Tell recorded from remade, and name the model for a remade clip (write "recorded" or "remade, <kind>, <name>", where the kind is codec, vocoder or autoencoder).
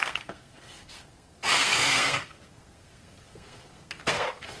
remade, codec, SNAC